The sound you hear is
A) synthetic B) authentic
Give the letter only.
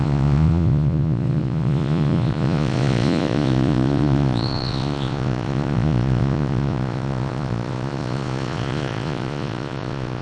A